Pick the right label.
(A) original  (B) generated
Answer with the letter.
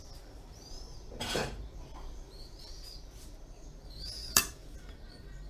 B